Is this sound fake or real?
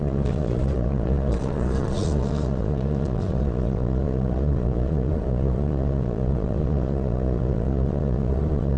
fake